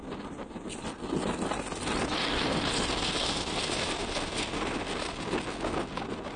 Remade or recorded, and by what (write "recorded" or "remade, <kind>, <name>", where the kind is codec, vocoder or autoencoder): recorded